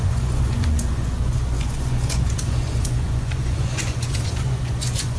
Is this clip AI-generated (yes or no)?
yes